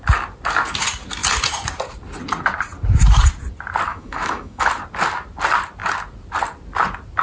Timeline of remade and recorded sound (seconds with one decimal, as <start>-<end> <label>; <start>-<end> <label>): 0.0-3.9 recorded; 3.9-4.7 remade; 4.7-7.2 recorded